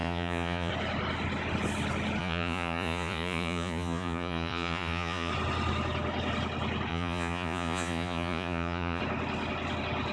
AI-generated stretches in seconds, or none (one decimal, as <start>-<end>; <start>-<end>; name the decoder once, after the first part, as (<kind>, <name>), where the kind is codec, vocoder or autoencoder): 0.0-0.7 (vocoder, Vocos); 2.2-5.3; 6.9-9.0